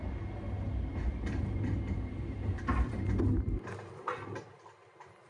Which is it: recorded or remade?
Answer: remade